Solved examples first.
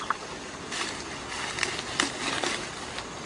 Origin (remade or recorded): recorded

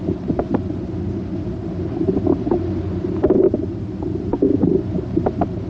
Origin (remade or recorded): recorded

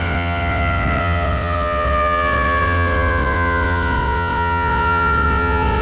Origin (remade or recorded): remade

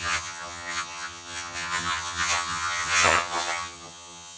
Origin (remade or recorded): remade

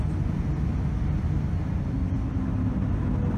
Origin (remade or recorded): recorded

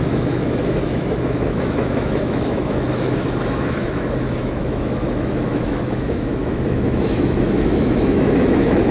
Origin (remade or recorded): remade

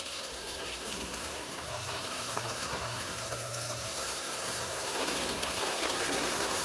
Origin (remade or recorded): remade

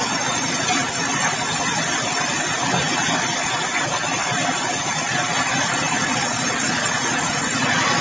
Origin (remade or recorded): recorded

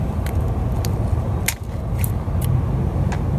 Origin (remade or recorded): recorded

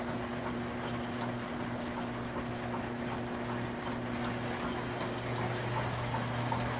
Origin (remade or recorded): recorded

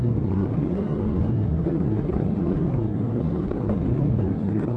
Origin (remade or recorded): remade